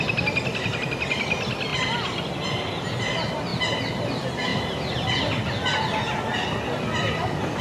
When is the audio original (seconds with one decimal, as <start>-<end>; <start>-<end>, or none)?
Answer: 0.0-7.6